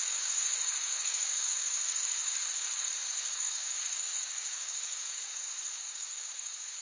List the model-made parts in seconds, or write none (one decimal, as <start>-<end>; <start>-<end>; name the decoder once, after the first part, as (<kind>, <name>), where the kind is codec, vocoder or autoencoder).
0.0-6.8 (codec, DAC)